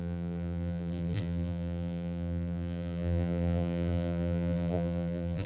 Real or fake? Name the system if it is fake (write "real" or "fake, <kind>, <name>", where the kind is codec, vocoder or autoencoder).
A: fake, vocoder, BigVGAN v2